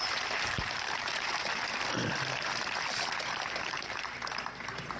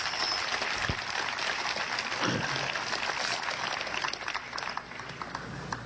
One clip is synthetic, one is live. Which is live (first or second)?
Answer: second